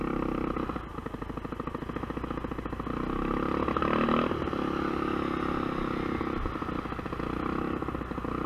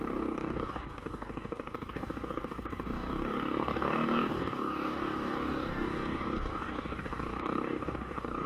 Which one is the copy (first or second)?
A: second